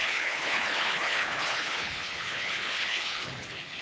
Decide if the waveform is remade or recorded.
remade